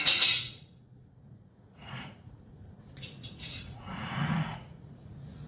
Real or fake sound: fake